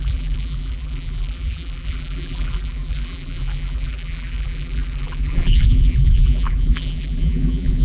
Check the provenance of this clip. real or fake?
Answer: fake